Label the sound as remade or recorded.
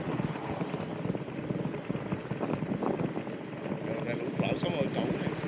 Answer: recorded